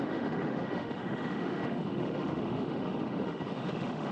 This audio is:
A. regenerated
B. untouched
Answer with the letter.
A